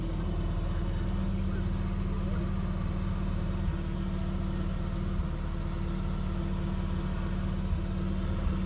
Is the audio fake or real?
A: real